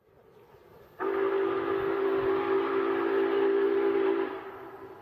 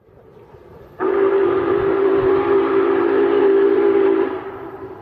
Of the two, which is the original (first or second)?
first